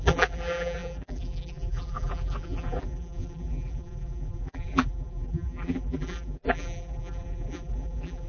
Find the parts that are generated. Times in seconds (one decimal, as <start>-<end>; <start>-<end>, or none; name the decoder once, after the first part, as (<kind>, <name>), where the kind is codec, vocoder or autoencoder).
0.0-8.3 (vocoder, BigVGAN v2)